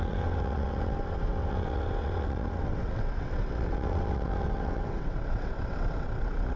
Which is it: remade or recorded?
remade